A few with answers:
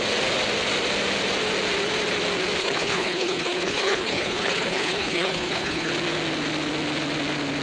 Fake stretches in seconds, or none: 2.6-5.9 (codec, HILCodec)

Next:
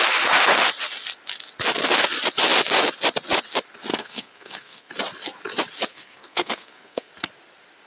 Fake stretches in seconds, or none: 3.9-4.9 (codec, SNAC); 5.9-7.1

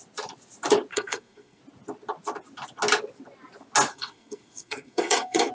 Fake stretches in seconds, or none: 0.9-1.6 (codec, SNAC); 3.9-5.5